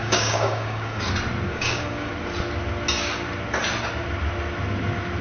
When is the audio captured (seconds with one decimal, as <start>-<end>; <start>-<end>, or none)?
1.1-1.5; 2.1-5.2